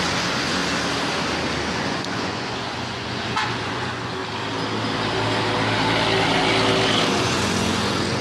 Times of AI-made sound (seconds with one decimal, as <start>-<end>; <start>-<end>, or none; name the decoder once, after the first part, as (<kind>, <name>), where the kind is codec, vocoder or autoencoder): 0.0-0.6 (vocoder, Vocos); 1.7-4.2; 7.1-8.2